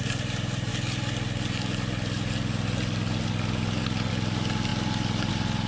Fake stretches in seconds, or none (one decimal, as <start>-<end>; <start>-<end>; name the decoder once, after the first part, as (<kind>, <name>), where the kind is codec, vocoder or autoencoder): none